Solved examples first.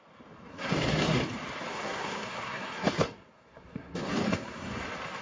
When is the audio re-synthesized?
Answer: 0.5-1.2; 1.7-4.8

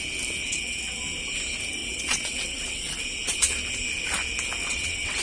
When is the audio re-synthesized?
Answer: 0.4-1.0; 1.8-2.9; 4.6-5.2

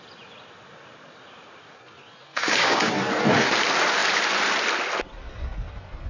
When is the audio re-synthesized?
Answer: 2.3-2.9

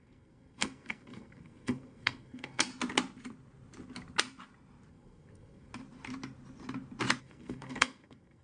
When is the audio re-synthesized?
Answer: 0.0-2.7; 4.9-5.7; 7.2-8.4